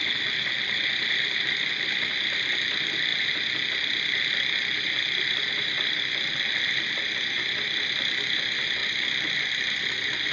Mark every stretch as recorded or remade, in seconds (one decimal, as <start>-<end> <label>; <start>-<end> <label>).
0.0-10.3 recorded